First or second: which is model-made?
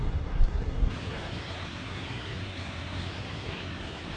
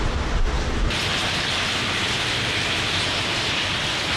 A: first